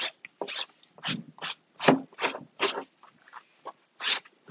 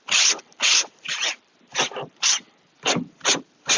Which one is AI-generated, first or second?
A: second